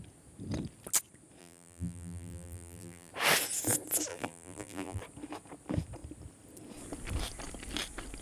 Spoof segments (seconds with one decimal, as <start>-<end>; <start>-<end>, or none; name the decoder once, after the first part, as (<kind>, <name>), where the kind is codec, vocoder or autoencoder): 1.4-3.1 (vocoder, BigVGAN v2); 4.1-5.0

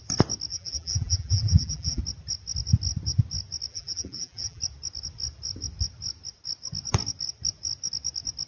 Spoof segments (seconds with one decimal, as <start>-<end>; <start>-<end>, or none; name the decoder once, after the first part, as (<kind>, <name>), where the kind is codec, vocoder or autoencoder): 0.5-2.0 (vocoder, BigVGAN v2); 3.7-4.6